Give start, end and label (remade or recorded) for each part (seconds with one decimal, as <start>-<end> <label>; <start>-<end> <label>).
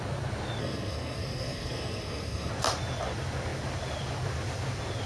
0.0-0.6 recorded; 0.6-2.5 remade; 2.5-5.1 recorded